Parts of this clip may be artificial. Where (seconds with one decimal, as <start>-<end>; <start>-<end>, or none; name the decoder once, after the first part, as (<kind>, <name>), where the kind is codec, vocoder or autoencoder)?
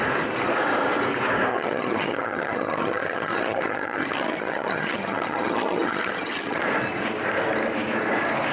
1.5-6.6 (vocoder, HiFi-GAN)